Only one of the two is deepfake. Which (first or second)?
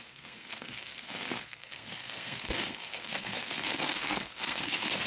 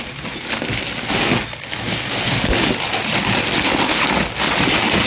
first